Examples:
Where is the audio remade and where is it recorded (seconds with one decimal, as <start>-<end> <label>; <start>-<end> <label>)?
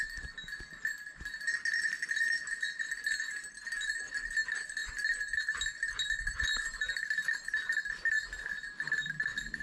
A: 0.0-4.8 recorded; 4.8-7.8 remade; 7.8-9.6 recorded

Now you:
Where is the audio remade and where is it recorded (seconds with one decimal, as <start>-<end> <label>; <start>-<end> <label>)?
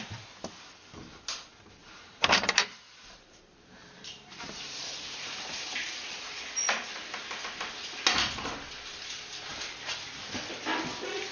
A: 0.0-1.8 recorded; 1.8-6.4 remade; 6.4-11.3 recorded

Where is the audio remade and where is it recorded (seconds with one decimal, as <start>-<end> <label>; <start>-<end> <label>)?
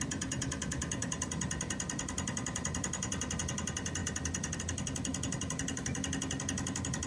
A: 0.0-1.0 recorded; 1.0-3.4 remade; 3.4-4.0 recorded; 4.0-4.6 remade; 4.6-7.1 recorded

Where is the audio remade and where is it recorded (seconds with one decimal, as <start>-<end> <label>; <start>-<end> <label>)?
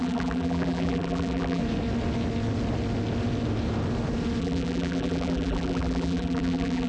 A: 0.0-1.6 remade; 1.6-4.4 recorded; 4.4-6.9 remade